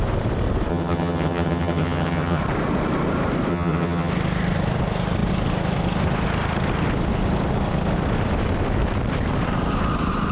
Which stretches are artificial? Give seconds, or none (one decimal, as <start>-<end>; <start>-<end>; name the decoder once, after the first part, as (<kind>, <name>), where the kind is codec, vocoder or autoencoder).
0.7-2.4 (vocoder, HiFi-GAN); 3.5-4.1